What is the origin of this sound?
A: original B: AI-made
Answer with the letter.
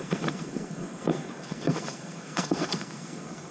B